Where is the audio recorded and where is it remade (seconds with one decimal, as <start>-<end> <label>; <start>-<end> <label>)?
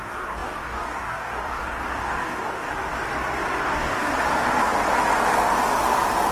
0.0-2.7 remade; 2.7-3.6 recorded; 3.6-4.1 remade; 4.1-6.3 recorded